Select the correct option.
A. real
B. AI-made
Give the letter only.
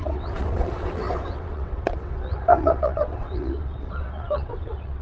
B